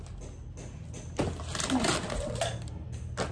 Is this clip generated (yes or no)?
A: no